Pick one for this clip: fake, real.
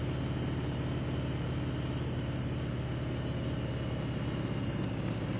real